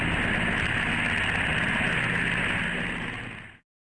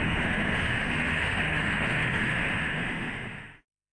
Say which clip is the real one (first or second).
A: first